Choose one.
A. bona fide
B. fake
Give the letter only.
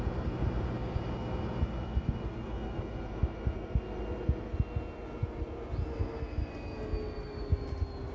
A